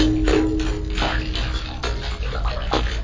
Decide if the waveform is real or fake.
real